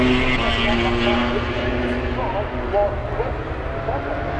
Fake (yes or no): no